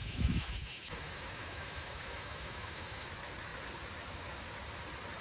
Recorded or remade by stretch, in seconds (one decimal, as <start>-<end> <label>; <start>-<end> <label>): 0.0-3.1 remade; 3.1-5.2 recorded